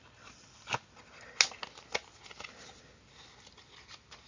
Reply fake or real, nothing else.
real